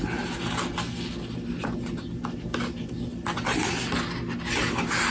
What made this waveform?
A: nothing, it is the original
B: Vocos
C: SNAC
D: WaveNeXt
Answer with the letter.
A